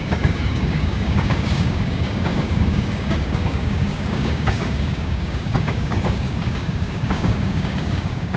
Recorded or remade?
remade